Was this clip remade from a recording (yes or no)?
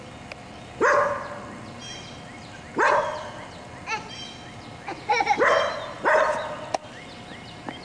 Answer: no